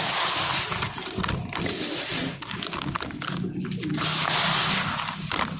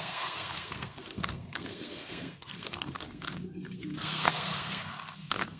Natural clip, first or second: first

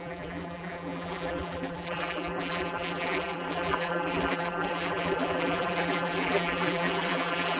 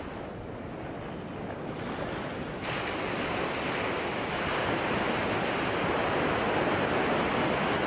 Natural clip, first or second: second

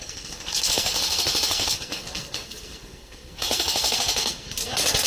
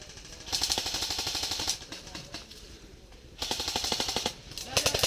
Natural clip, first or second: second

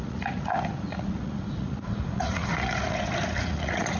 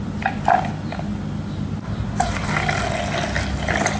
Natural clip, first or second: second